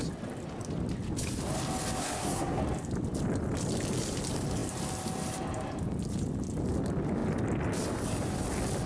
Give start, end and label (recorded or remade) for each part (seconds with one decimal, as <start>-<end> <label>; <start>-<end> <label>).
0.0-2.0 recorded; 2.0-2.6 remade; 2.6-8.9 recorded